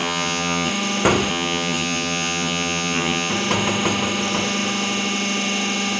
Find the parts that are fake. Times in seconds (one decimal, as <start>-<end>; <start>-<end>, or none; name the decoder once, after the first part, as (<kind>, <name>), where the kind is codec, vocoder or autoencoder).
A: 0.0-0.7 (vocoder, HiFi-GAN); 1.3-3.3